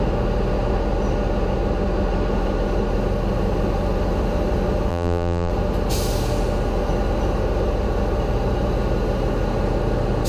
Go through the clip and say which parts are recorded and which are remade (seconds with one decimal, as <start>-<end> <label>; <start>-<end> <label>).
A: 0.0-4.9 recorded; 4.9-5.5 remade; 5.5-10.3 recorded

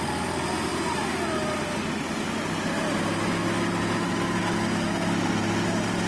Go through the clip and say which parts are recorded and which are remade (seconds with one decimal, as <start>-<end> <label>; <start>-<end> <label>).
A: 0.0-6.1 recorded

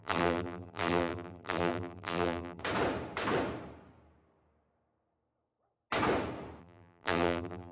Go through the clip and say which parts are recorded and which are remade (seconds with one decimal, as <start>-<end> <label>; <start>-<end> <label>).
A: 0.0-2.6 remade; 2.6-6.6 recorded; 6.6-7.7 remade

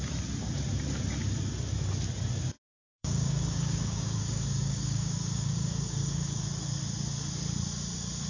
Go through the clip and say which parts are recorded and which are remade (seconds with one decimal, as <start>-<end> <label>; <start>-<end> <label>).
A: 0.0-2.8 recorded; 2.8-6.4 remade; 6.4-8.3 recorded

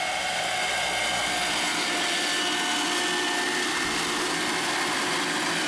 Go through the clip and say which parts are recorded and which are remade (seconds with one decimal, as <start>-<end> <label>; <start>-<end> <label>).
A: 0.0-5.7 recorded

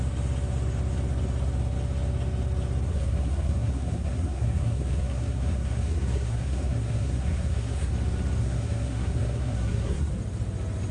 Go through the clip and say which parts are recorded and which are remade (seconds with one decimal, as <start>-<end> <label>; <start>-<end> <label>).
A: 0.0-2.9 recorded; 2.9-7.9 remade; 7.9-8.4 recorded; 8.4-10.1 remade; 10.1-10.9 recorded